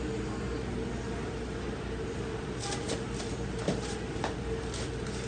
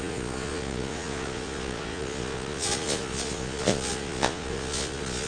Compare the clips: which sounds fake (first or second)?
second